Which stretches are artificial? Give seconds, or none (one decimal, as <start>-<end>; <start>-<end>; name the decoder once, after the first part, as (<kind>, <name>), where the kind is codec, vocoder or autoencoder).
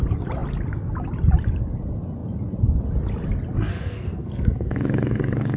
3.7-5.6 (codec, SNAC)